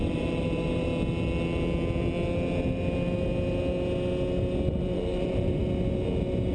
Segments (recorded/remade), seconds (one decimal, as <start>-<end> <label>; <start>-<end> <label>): 0.0-0.9 remade; 0.9-4.8 recorded; 4.8-5.6 remade; 5.6-6.5 recorded